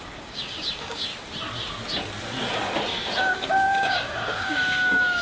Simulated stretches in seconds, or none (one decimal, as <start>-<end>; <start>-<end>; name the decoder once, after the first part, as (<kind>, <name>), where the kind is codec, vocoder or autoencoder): 0.0-1.1 (codec, DAC); 3.2-5.2